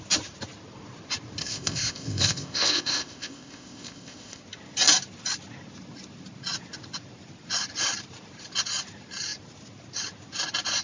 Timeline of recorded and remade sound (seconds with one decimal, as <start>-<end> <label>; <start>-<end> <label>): 0.0-1.4 recorded; 1.4-4.4 remade; 4.4-10.8 recorded